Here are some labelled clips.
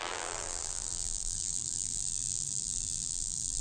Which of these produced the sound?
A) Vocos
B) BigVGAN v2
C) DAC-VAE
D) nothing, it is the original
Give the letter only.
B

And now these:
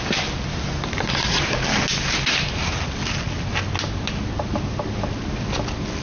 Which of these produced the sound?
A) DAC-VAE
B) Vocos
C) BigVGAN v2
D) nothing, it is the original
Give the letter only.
D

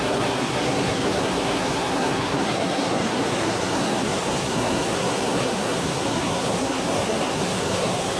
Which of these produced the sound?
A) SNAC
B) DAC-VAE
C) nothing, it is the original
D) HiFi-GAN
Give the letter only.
A